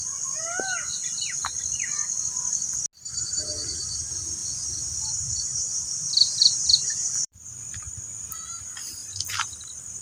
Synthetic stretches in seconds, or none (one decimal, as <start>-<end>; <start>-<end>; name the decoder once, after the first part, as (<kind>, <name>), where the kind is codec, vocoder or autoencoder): 4.4-7.8 (vocoder, BigVGAN v2)